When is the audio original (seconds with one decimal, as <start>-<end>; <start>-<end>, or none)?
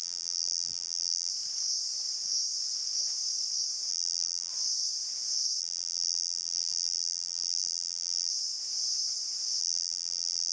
1.3-3.9; 4.5-5.6; 8.3-9.6